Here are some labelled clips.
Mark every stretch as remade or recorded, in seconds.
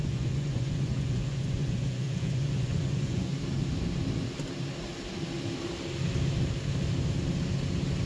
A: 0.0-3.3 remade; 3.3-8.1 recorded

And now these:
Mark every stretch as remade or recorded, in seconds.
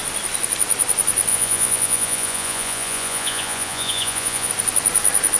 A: 0.0-1.3 recorded; 1.3-4.5 remade; 4.5-5.4 recorded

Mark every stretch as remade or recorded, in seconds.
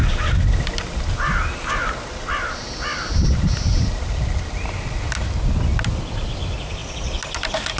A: 0.0-7.8 recorded